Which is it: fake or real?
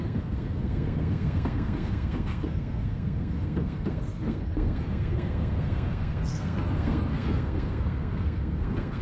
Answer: fake